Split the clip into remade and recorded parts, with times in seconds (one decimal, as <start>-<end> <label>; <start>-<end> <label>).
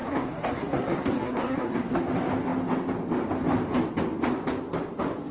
0.0-2.0 remade; 2.0-5.3 recorded